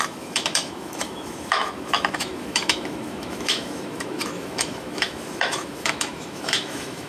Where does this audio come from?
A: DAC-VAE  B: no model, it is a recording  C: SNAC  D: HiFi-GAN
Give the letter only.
A